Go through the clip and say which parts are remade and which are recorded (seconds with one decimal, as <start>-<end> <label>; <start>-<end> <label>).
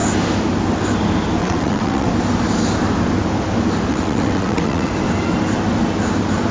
0.0-1.4 recorded; 1.4-2.1 remade; 2.1-3.9 recorded; 3.9-4.9 remade; 4.9-6.5 recorded